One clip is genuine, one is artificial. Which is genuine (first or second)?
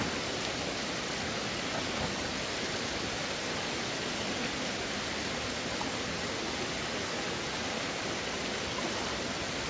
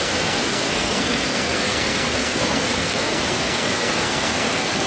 first